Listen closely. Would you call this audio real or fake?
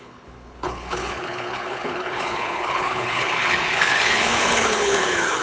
fake